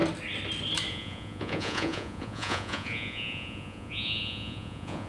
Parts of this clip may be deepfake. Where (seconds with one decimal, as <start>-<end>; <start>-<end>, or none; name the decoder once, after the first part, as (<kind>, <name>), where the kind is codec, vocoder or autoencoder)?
0.9-5.1 (vocoder, Vocos)